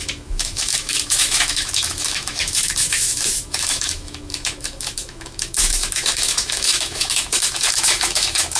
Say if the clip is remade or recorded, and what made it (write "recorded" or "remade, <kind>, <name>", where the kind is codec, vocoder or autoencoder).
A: remade, autoencoder, DAC-VAE